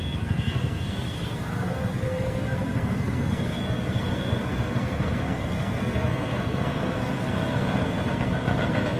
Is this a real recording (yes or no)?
no